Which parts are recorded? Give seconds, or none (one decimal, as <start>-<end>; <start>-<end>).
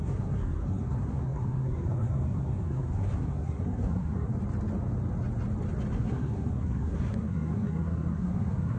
4.3-5.9